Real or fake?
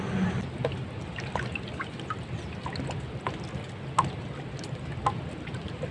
real